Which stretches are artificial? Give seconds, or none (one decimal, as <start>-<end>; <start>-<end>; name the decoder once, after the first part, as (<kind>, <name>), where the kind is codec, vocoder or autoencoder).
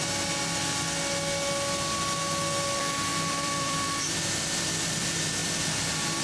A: 3.1-4.2 (vocoder, BigVGAN v2)